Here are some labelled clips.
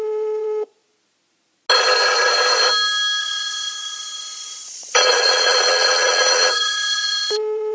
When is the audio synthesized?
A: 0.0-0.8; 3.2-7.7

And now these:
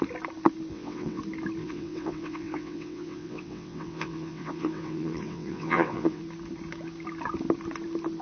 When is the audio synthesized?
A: 0.7-1.2; 1.6-6.2

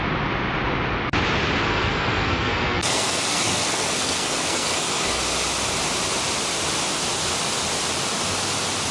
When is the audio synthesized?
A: 1.6-5.2

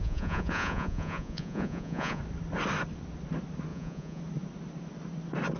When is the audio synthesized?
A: 0.0-2.2; 3.7-4.2

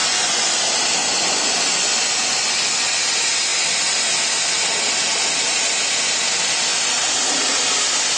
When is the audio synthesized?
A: 0.0-0.5; 1.0-2.8

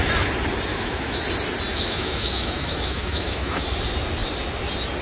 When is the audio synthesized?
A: 0.7-1.2; 1.7-3.8

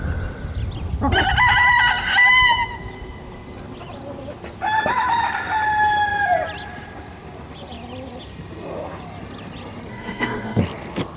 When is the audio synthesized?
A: 9.9-10.6